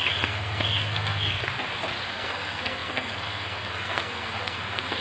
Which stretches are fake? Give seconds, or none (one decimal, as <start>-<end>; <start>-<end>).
0.0-1.5; 2.1-5.0